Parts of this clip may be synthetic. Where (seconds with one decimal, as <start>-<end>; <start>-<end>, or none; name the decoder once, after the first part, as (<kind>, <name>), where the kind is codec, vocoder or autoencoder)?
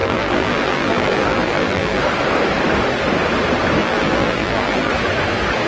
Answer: 0.0-2.0 (vocoder, BigVGAN v2); 3.8-4.9